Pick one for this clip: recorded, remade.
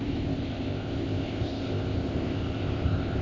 remade